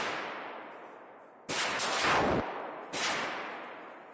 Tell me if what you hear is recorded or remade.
recorded